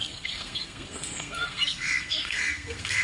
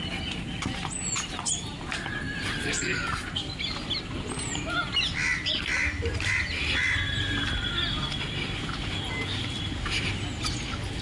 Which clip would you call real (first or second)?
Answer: second